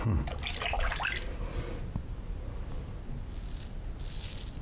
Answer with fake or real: real